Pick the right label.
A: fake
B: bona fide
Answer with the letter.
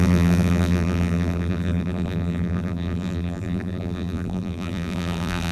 A